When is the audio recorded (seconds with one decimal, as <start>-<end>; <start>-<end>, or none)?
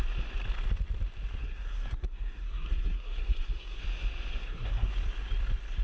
0.0-1.4; 3.8-4.4; 4.9-5.8